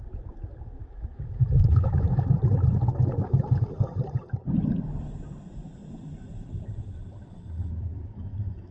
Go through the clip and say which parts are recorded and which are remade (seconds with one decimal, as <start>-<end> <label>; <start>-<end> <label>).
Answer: 0.0-0.8 recorded; 0.8-2.4 remade; 2.4-7.2 recorded; 7.2-8.7 remade

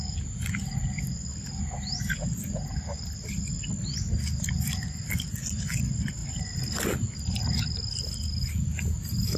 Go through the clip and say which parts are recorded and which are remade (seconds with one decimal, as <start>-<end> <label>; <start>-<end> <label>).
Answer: 0.0-9.4 recorded

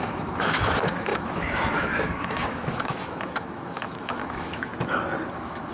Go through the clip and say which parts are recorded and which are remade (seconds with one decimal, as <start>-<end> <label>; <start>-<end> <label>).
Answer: 0.0-4.7 remade; 4.7-5.3 recorded; 5.3-5.7 remade

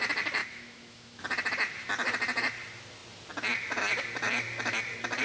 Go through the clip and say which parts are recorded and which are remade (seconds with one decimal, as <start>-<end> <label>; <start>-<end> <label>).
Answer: 0.0-0.4 recorded; 0.4-1.2 remade; 1.2-5.2 recorded

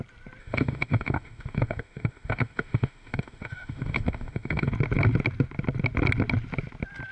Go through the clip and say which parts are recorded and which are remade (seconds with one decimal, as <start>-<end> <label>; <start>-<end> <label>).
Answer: 0.0-0.4 recorded; 0.4-4.7 remade; 4.7-7.1 recorded

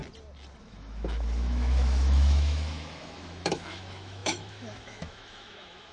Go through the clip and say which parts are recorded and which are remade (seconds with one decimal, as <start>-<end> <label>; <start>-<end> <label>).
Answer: 0.0-0.6 recorded; 0.6-5.9 remade